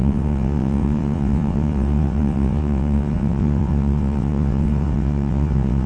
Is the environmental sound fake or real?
fake